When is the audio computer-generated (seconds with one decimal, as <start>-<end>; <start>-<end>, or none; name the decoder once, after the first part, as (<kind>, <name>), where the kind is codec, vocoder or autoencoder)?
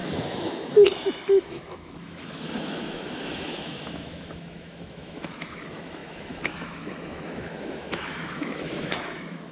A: 0.0-9.5 (autoencoder, DAC-VAE)